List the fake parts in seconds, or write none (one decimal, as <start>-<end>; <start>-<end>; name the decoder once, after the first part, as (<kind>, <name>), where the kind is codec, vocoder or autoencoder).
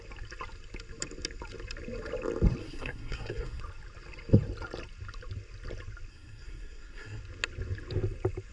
2.6-3.6 (codec, SNAC); 6.1-7.2